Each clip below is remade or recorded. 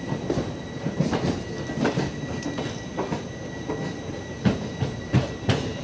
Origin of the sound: recorded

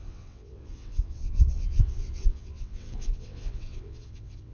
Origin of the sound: remade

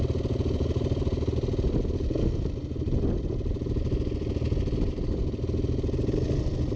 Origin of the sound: recorded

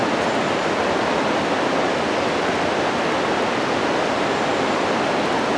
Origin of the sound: recorded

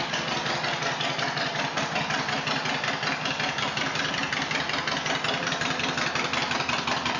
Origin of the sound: recorded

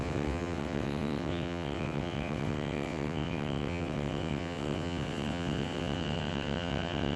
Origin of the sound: remade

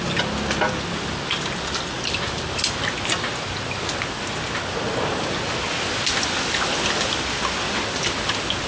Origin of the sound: recorded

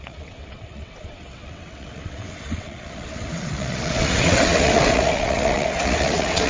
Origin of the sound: remade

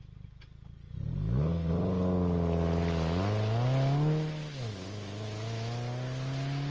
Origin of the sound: recorded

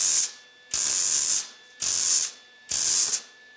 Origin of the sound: recorded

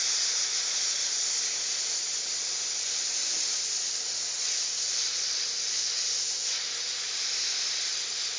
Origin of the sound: recorded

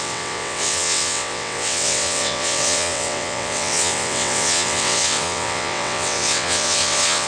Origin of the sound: remade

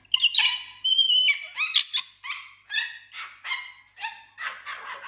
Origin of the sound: recorded